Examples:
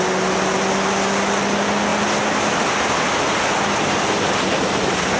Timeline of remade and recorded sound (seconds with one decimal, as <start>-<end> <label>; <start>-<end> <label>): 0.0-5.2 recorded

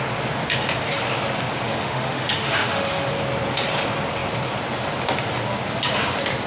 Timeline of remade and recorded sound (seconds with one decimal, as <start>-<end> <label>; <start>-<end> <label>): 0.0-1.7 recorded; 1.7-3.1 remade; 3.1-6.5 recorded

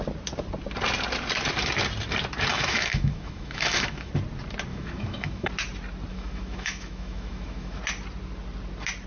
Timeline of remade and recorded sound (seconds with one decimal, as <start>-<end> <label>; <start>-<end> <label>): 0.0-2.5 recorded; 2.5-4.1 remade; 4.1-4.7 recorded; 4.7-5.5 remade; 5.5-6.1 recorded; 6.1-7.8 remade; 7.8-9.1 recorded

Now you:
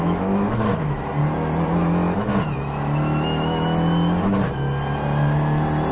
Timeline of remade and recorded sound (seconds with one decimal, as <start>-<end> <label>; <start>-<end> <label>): 0.0-1.1 remade; 1.1-1.8 recorded; 1.8-2.3 remade; 2.3-5.9 recorded

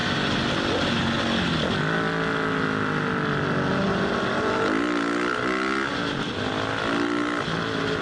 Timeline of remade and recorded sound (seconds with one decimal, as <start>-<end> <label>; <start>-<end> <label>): 0.0-8.0 recorded

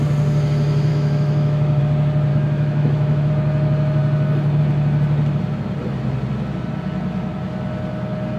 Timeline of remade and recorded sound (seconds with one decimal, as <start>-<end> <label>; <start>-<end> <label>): 0.0-0.9 recorded; 0.9-1.8 remade; 1.8-2.3 recorded; 2.3-3.3 remade; 3.3-8.4 recorded

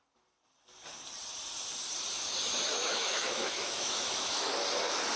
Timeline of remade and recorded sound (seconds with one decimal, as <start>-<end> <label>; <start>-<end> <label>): 0.0-2.8 recorded; 2.8-4.5 remade; 4.5-5.2 recorded

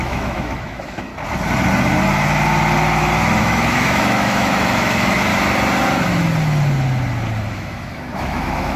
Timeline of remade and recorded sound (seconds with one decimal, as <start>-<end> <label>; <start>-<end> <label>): 0.0-1.1 remade; 1.1-3.4 recorded; 3.4-5.3 remade; 5.3-7.5 recorded; 7.5-8.8 remade